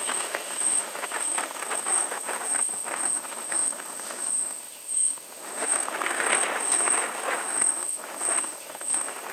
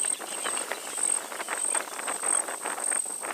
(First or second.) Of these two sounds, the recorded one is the second